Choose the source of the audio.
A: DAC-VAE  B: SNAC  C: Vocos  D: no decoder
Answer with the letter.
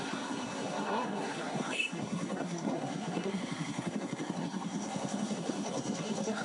B